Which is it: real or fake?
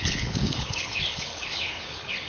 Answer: fake